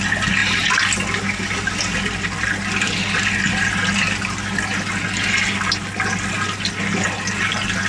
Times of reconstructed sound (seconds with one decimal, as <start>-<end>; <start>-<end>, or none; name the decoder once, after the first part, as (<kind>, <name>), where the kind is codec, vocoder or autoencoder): none